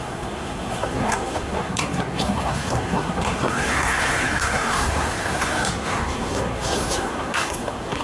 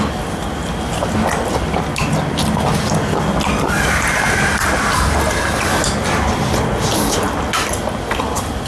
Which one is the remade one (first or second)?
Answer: first